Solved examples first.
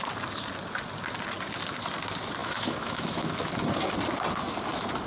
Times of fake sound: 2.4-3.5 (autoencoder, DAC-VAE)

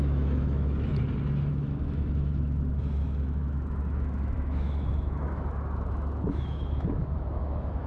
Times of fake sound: 0.0-0.9 (autoencoder, DAC-VAE); 1.5-7.9

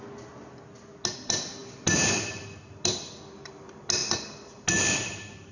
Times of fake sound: none

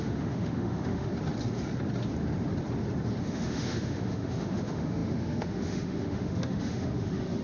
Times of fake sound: 0.0-1.1 (autoencoder, DAC-VAE); 3.2-7.4

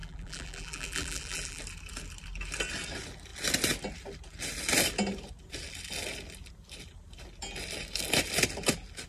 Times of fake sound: 0.0-1.6 (vocoder, BigVGAN v2)